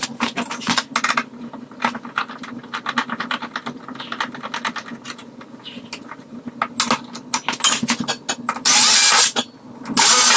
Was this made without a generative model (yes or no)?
yes